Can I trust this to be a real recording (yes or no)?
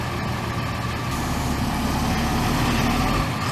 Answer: yes